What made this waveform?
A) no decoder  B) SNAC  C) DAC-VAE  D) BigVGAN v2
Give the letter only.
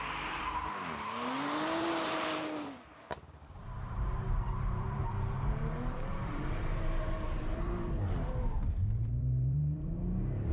D